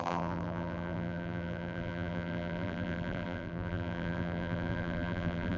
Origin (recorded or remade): remade